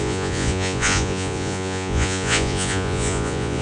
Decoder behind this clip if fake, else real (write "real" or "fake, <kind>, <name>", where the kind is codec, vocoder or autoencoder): fake, vocoder, Vocos